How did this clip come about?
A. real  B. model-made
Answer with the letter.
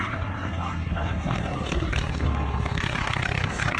B